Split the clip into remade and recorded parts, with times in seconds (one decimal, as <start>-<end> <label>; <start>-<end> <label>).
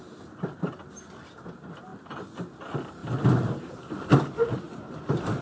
0.0-5.4 recorded